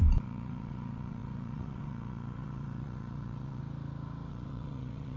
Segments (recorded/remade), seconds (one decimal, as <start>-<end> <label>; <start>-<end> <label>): 0.0-3.6 remade; 3.6-4.3 recorded; 4.3-5.2 remade